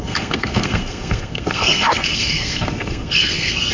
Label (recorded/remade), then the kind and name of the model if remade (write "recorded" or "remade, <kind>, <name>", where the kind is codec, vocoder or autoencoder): remade, codec, SNAC